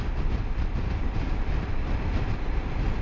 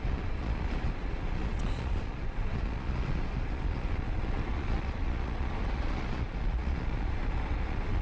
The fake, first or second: second